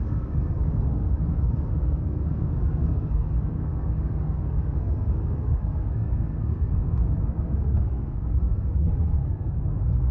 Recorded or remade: remade